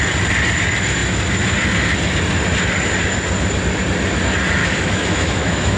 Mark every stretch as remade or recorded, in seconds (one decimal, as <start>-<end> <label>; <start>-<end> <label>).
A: 0.0-4.6 recorded; 4.6-5.8 remade